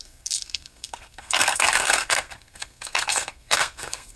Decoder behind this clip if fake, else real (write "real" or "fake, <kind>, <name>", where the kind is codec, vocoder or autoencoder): fake, codec, SNAC